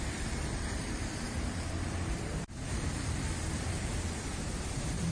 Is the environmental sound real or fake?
fake